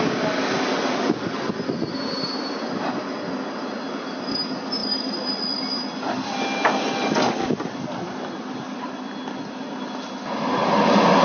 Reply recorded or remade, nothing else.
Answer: recorded